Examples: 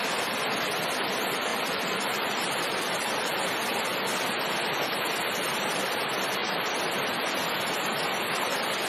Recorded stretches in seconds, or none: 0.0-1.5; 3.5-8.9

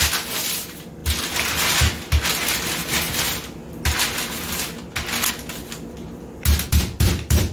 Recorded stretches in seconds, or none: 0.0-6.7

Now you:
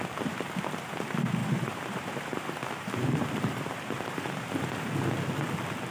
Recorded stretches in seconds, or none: 0.0-1.4; 4.9-5.9

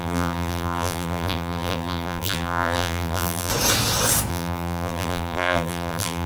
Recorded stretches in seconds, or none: 3.5-4.3

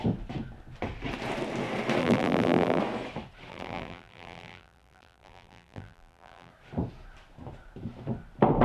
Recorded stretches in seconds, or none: 0.0-2.0; 2.8-3.5; 6.5-8.6

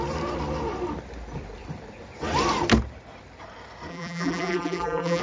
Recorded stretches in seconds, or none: 0.0-3.9

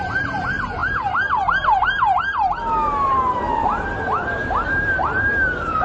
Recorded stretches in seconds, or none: none

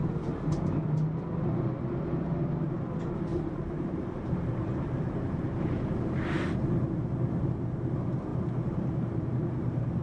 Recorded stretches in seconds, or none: 0.0-3.3; 5.8-8.3